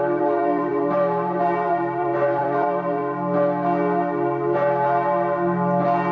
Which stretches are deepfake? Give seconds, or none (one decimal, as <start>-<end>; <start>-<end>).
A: 0.0-3.0